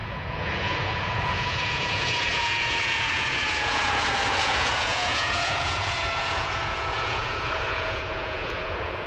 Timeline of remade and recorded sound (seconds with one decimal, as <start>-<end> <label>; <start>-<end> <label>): 0.0-9.1 remade